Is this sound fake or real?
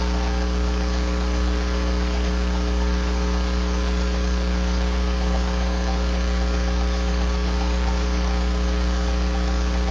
fake